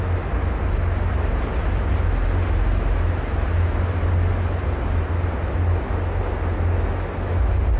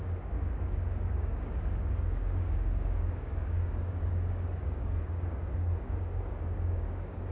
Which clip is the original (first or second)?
first